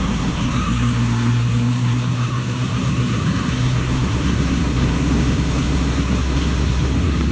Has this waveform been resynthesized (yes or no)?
yes